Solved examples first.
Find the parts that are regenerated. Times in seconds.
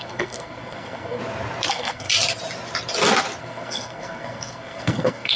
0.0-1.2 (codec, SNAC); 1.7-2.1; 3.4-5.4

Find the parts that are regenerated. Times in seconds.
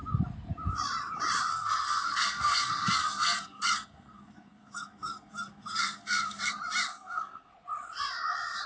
1.5-6.5 (codec, SNAC); 6.9-7.5